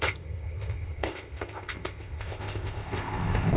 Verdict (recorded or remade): remade